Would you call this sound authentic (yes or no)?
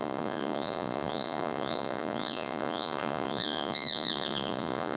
no